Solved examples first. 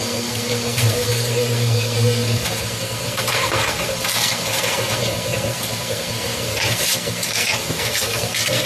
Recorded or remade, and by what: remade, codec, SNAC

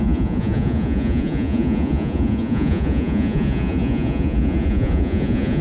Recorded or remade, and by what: remade, vocoder, Vocos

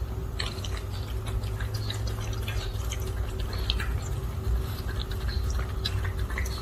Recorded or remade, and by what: recorded